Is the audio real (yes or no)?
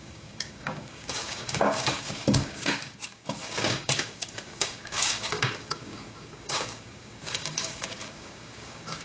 no